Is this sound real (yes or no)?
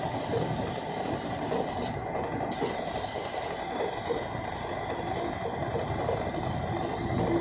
yes